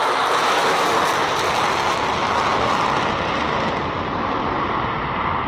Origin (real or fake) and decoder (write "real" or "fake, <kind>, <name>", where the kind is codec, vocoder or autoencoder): real